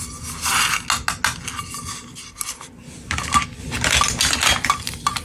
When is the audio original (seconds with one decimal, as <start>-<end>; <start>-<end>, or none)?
0.0-5.2